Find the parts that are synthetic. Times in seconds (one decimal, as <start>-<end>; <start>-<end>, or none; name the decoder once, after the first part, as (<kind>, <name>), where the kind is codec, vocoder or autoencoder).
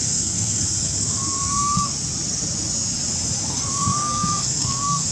0.0-1.9 (codec, SNAC); 3.5-5.1